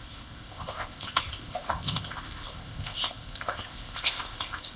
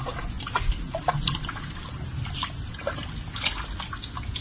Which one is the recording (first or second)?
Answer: second